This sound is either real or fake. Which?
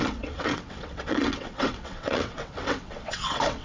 fake